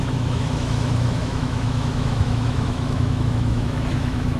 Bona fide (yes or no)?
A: no